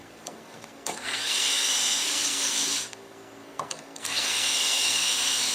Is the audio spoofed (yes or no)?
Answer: yes